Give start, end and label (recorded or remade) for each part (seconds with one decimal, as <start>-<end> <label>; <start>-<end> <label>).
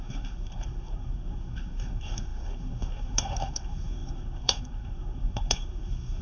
0.0-6.2 remade